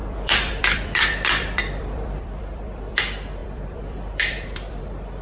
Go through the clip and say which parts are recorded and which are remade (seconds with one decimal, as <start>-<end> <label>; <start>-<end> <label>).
0.0-3.0 remade; 3.0-3.4 recorded; 3.4-4.8 remade; 4.8-5.2 recorded